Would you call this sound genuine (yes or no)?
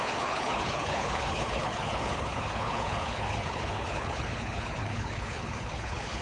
no